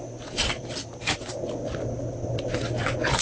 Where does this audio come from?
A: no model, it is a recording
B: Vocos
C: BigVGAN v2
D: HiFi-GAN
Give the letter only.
A